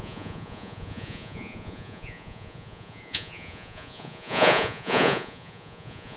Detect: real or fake fake